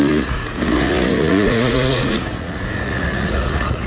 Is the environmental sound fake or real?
fake